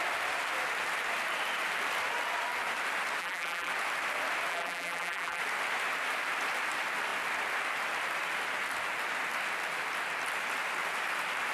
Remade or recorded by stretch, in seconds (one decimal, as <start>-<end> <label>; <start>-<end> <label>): 0.0-3.2 recorded; 3.2-3.7 remade; 3.7-4.5 recorded; 4.5-5.4 remade; 5.4-11.5 recorded